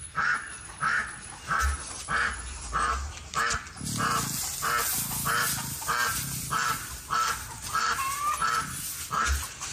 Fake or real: real